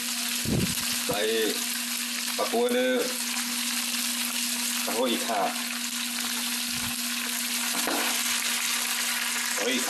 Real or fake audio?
real